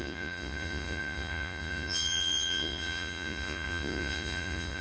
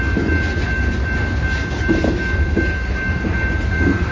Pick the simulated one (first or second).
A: first